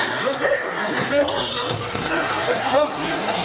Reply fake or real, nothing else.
fake